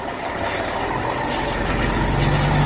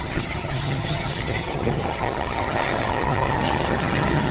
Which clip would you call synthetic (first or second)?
second